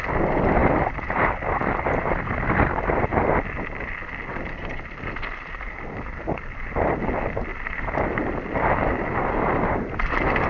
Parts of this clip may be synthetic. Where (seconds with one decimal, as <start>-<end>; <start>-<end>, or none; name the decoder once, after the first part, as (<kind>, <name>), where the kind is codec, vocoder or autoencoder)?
0.6-1.8 (vocoder, BigVGAN v2); 7.5-8.6